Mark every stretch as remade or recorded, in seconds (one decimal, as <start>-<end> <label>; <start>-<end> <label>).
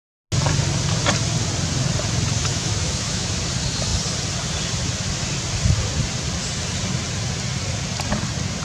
0.0-2.5 recorded; 2.5-3.4 remade; 3.4-8.6 recorded